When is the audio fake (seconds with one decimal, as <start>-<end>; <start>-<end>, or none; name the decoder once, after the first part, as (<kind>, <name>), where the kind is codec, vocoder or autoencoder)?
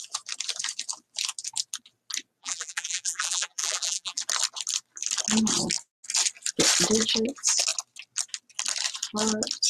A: 2.4-4.2 (vocoder, BigVGAN v2)